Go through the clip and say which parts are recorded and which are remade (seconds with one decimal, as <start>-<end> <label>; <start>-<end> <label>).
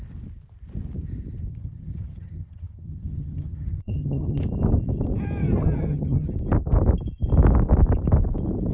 0.0-1.5 recorded; 1.5-4.4 remade; 4.4-5.4 recorded; 5.4-6.3 remade; 6.3-8.7 recorded